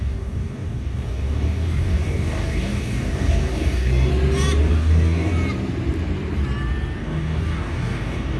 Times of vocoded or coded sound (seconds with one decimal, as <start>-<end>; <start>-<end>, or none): 0.0-4.1; 4.6-5.3; 7.0-8.4